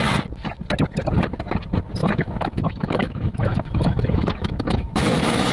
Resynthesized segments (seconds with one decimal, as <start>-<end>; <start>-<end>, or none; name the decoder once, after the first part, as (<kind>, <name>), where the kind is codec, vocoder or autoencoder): 2.0-5.5 (autoencoder, DAC-VAE)